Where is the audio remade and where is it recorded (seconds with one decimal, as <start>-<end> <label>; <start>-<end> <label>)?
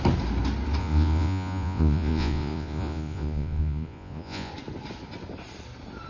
0.0-0.8 recorded; 0.8-4.5 remade; 4.5-6.1 recorded